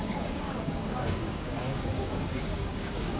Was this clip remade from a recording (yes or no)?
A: yes